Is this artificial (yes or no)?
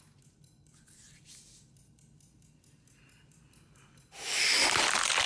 no